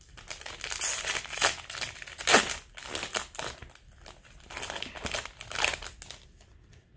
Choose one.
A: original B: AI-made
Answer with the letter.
A